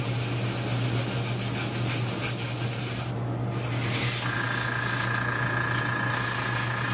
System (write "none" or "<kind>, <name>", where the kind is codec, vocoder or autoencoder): none